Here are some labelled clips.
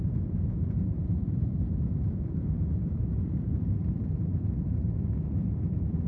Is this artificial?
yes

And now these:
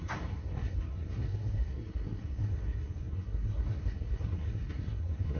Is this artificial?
yes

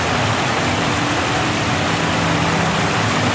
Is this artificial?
no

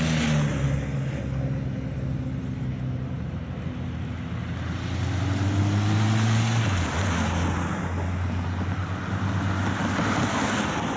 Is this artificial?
no